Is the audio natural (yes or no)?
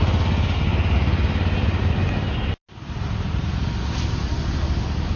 yes